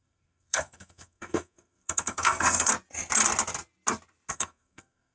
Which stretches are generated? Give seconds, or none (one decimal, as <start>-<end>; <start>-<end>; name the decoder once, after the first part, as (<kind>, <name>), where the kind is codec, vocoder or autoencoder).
0.0-2.7 (codec, SNAC); 4.3-5.1